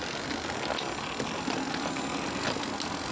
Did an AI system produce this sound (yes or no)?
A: no